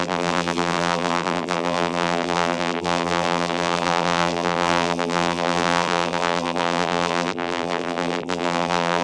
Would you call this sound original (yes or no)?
no